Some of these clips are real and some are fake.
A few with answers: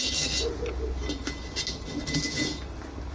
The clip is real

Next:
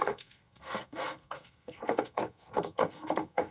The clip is fake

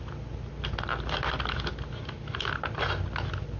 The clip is real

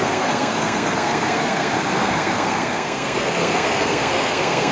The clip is fake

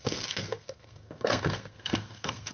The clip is fake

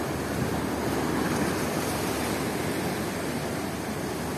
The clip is real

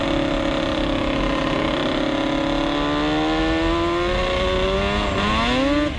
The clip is real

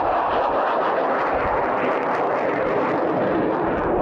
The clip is real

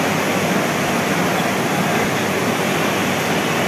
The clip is real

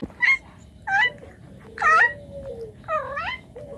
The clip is real